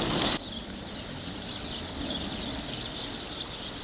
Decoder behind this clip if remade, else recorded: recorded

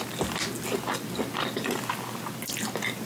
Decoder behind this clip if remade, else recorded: recorded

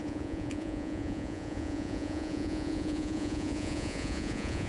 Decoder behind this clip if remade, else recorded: remade, vocoder, Vocos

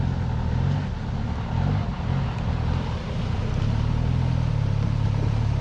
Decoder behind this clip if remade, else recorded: recorded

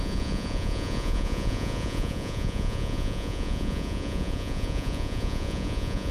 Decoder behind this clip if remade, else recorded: remade, vocoder, Vocos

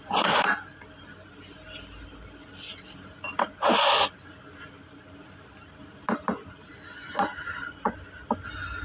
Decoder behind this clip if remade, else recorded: recorded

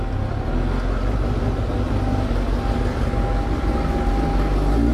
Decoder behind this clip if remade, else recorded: recorded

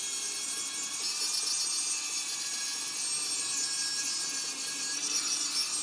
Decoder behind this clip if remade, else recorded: recorded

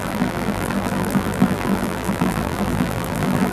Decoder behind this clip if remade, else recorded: remade, vocoder, BigVGAN v2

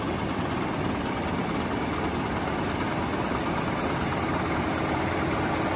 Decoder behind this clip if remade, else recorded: recorded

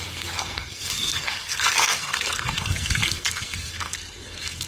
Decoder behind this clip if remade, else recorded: remade, codec, SNAC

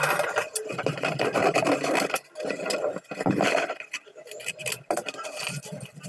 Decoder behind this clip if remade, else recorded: recorded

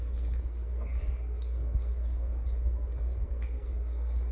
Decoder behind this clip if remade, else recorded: remade, codec, SNAC